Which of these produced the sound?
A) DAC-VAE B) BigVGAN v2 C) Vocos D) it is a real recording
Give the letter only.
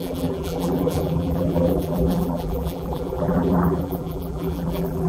B